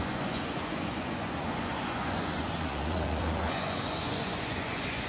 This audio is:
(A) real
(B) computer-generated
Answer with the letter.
B